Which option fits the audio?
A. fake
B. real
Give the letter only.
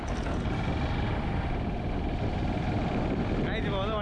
B